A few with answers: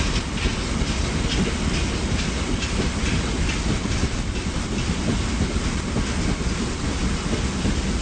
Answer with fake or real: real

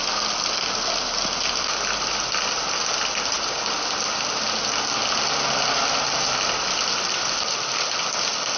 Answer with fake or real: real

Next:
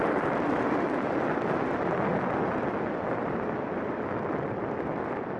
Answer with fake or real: fake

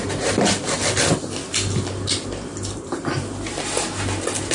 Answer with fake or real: real